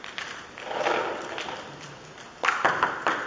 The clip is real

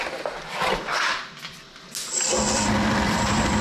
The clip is real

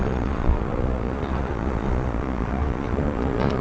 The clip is fake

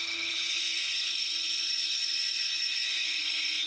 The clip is fake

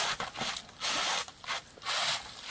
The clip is real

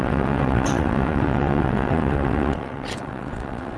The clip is fake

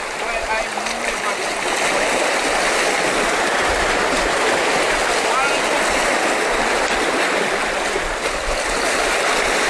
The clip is real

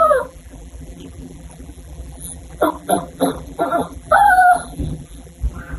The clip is fake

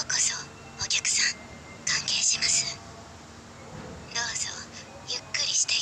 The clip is real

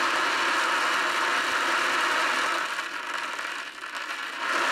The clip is real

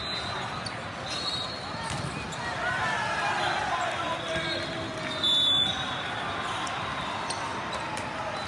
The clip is real